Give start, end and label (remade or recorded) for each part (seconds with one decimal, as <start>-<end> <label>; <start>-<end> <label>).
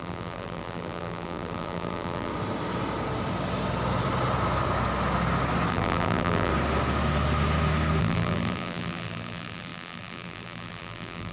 0.0-2.3 remade; 2.3-5.7 recorded; 5.7-6.5 remade; 6.5-8.0 recorded; 8.0-11.3 remade